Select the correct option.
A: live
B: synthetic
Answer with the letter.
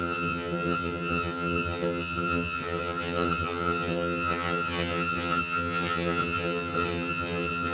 B